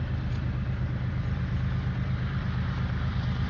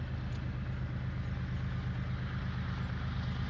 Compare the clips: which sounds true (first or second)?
second